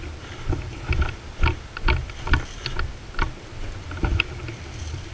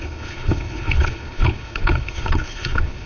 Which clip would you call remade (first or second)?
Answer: second